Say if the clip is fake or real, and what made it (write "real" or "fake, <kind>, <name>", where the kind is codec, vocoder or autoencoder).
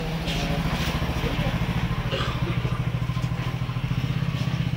real